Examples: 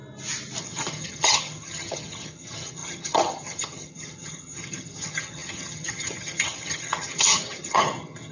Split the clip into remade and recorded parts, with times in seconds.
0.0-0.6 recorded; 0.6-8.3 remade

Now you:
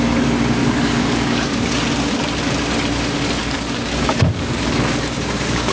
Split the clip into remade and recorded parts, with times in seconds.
0.0-0.6 recorded; 0.6-1.8 remade; 1.8-3.4 recorded; 3.4-5.7 remade